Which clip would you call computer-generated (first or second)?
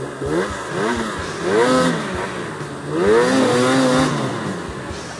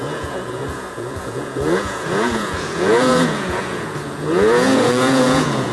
second